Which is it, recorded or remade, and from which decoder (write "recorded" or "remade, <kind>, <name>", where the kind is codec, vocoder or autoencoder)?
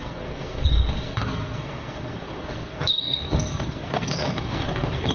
remade, codec, SNAC